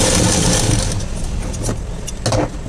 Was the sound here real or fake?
real